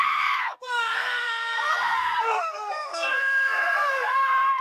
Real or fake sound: fake